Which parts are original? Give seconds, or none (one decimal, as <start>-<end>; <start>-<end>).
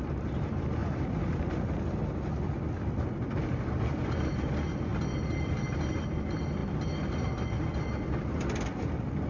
0.0-9.3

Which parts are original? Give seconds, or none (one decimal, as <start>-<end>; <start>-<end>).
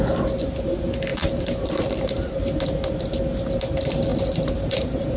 0.0-1.1; 2.6-4.1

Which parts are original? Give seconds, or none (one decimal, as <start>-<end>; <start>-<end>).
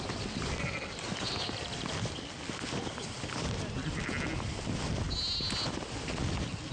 0.0-6.7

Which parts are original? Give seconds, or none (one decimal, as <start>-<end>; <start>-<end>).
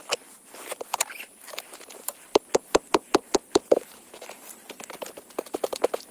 0.0-6.1